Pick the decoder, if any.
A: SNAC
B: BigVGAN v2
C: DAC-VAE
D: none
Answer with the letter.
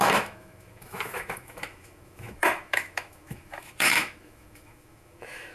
C